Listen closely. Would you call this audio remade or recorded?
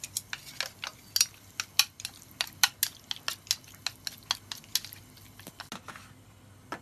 recorded